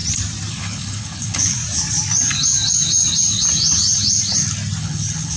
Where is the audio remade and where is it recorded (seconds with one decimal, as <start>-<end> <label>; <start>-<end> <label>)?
0.0-0.5 recorded; 0.5-1.6 remade; 1.6-4.8 recorded; 4.8-5.4 remade